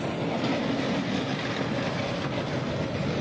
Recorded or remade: recorded